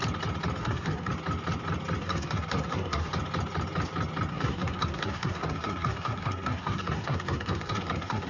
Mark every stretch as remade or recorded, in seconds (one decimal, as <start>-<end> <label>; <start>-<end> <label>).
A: 0.0-0.6 recorded; 0.6-1.1 remade; 1.1-2.0 recorded; 2.0-3.1 remade; 3.1-4.3 recorded; 4.3-8.3 remade